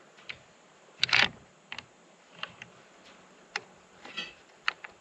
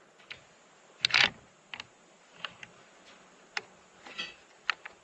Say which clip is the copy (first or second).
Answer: first